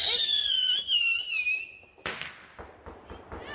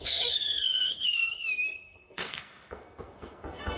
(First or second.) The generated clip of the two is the second